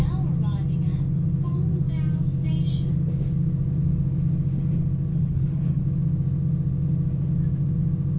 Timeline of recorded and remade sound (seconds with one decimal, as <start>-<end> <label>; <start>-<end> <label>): 0.0-5.1 recorded; 5.1-5.8 remade; 5.8-8.2 recorded